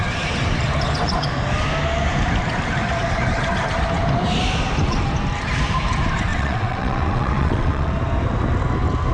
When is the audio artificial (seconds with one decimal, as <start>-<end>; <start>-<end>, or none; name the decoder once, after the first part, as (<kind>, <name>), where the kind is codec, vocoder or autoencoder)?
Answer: 6.3-7.9 (vocoder, WaveNeXt)